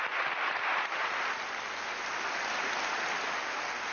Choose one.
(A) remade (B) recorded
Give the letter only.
B